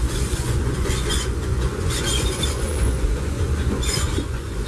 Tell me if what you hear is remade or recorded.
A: remade